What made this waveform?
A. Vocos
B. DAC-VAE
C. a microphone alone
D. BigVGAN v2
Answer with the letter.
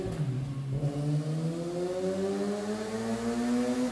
C